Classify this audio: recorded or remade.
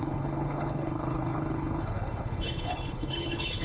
remade